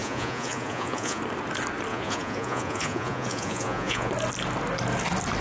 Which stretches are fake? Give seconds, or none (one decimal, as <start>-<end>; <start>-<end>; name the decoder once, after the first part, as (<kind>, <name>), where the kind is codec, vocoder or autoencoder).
0.0-1.2 (vocoder, Vocos); 1.9-4.1